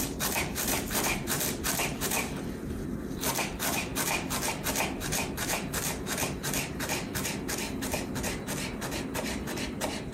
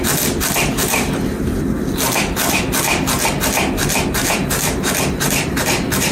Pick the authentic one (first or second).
second